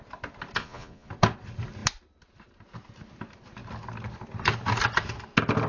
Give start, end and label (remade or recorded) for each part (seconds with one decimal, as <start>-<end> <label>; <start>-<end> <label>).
0.0-0.6 recorded; 0.6-1.1 remade; 1.1-5.7 recorded